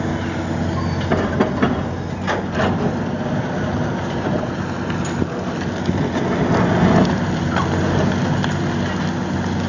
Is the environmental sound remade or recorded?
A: recorded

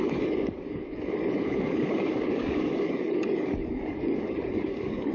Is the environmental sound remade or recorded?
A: remade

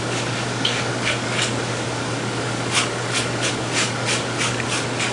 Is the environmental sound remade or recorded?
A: remade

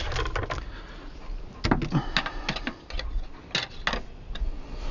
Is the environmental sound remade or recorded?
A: recorded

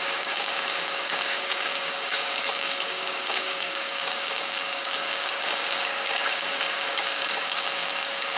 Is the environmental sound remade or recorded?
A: remade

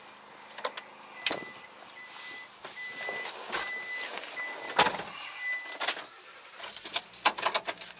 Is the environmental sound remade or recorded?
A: recorded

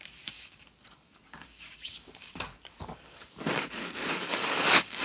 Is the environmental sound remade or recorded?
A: remade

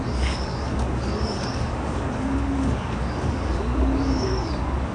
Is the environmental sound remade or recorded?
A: remade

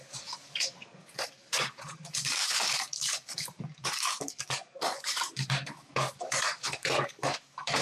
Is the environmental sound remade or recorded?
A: remade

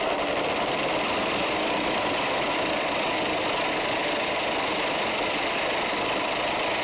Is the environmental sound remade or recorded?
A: recorded